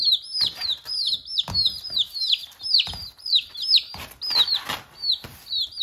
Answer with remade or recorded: recorded